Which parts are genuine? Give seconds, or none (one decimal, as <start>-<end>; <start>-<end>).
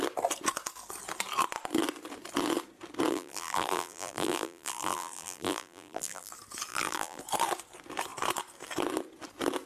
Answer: 0.0-3.1; 6.3-6.7; 7.2-9.7